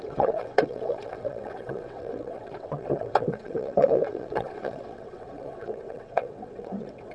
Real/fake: fake